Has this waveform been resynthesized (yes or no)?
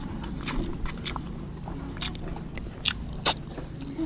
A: no